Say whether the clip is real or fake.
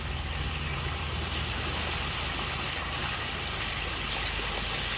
real